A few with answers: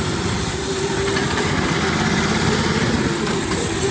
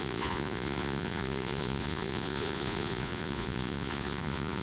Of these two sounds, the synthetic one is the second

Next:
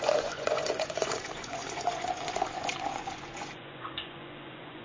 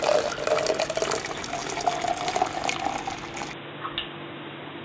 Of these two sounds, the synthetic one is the first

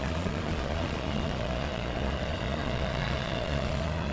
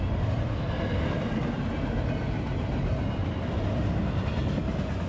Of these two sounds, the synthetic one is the first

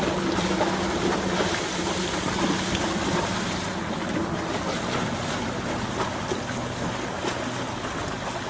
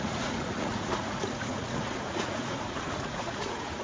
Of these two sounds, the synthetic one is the second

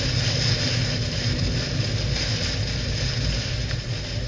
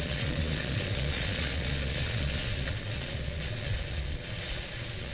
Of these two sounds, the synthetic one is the second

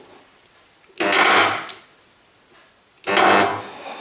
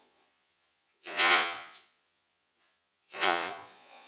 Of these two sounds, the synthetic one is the second